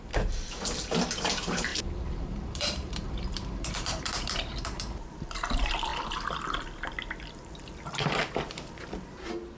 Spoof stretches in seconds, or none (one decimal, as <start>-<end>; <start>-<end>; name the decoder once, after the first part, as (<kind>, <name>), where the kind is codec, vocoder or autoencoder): 0.0-5.9 (vocoder, BigVGAN v2)